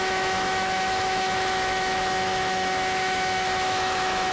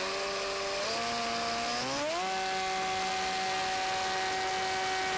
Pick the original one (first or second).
second